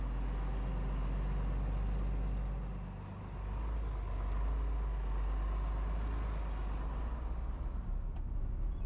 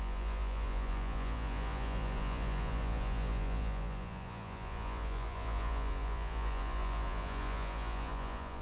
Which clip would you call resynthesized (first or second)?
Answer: second